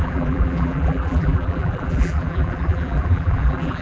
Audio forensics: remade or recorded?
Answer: remade